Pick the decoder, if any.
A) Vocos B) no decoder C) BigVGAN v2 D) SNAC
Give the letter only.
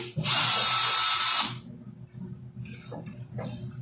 B